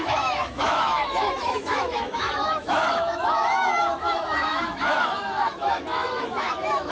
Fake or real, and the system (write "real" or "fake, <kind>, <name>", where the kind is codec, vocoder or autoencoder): fake, autoencoder, DAC-VAE